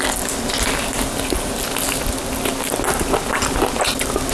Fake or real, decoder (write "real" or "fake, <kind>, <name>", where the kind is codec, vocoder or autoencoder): real